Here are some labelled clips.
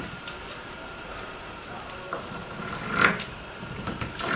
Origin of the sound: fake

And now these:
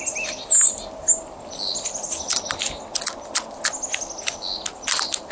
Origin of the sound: real